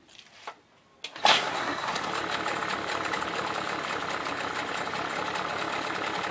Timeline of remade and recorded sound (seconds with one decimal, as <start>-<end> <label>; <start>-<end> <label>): 0.0-1.3 recorded; 1.3-2.1 remade; 2.1-6.3 recorded